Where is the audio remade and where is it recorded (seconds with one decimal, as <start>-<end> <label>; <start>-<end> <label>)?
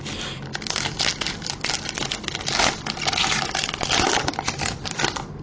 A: 0.0-5.4 recorded